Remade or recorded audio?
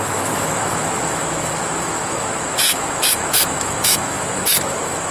remade